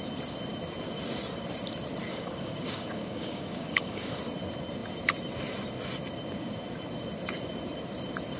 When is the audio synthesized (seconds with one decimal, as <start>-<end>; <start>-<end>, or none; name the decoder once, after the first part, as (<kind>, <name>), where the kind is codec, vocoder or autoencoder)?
2.1-4.2 (codec, DAC)